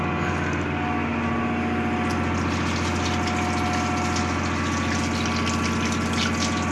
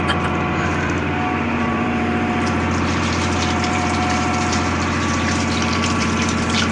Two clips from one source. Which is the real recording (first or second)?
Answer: first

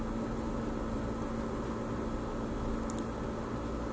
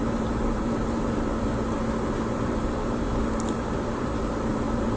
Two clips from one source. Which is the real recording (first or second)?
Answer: first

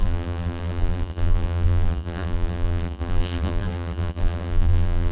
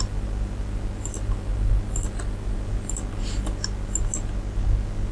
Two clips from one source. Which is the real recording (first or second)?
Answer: second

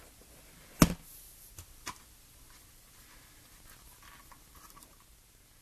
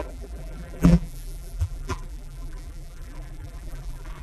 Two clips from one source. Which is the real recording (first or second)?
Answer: first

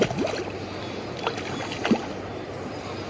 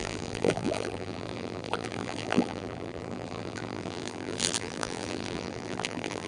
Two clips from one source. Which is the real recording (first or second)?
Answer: first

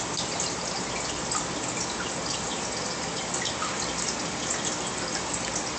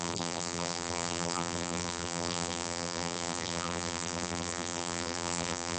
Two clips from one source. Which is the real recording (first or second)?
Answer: first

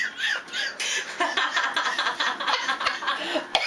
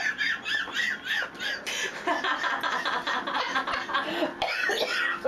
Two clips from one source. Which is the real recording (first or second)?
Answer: second